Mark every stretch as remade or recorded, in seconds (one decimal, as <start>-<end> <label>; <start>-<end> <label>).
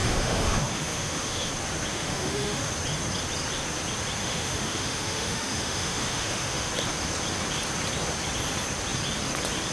0.0-1.5 remade; 1.5-1.9 recorded; 1.9-2.7 remade; 2.7-4.2 recorded; 4.2-6.7 remade; 6.7-9.7 recorded